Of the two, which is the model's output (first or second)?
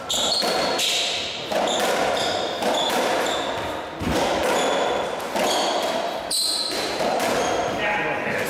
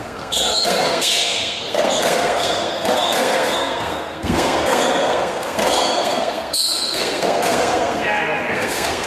second